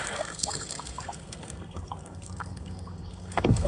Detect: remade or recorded remade